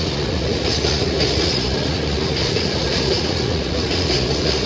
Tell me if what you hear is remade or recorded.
remade